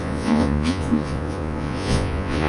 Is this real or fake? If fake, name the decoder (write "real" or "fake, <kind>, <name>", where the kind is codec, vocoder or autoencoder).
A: fake, vocoder, Vocos